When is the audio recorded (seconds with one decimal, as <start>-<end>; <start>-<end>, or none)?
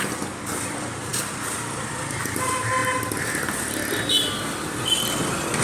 0.0-5.6